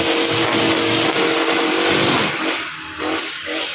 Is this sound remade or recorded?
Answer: recorded